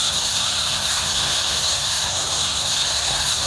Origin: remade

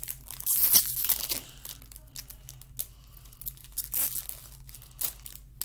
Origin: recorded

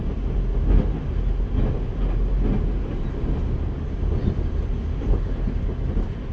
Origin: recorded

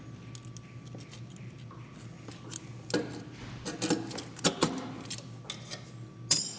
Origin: recorded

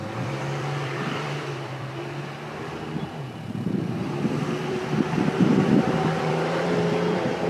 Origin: remade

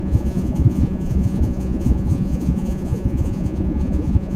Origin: remade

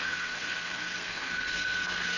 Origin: remade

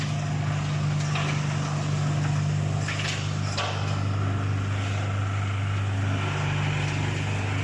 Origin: recorded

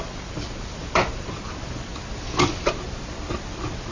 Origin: recorded